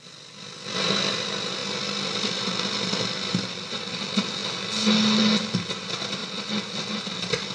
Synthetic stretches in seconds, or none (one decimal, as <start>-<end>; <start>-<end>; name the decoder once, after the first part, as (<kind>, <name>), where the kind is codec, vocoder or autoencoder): none